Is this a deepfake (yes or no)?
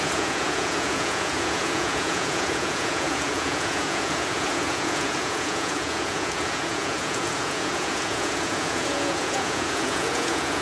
yes